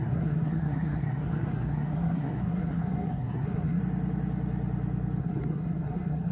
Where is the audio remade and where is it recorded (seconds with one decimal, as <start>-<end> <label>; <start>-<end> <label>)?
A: 0.0-3.8 remade; 3.8-5.2 recorded; 5.2-6.3 remade